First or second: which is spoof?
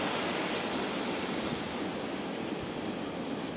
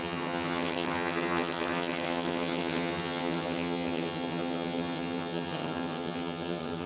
second